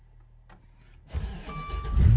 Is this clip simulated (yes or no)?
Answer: no